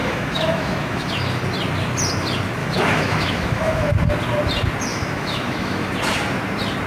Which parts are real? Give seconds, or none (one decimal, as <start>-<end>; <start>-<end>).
1.1-2.6; 3.9-4.9; 5.9-6.9